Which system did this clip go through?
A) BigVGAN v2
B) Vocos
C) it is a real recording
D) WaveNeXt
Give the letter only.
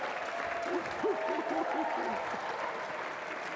C